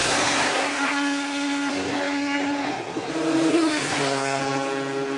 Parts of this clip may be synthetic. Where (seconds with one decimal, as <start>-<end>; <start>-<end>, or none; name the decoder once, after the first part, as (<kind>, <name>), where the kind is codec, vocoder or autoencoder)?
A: 0.0-3.1 (codec, SNAC); 3.5-4.4